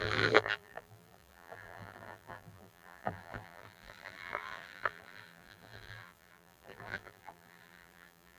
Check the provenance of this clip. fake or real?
fake